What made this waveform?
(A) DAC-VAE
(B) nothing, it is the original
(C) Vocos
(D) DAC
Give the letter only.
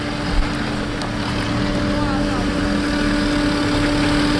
B